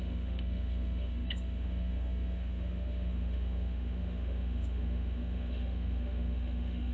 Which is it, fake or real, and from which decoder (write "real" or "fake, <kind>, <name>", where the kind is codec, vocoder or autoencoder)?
fake, autoencoder, DAC-VAE